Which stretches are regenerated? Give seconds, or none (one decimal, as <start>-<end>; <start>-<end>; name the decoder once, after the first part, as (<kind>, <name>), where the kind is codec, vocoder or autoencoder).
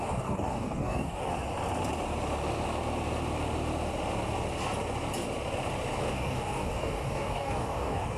0.0-1.3 (codec, DAC); 6.0-8.2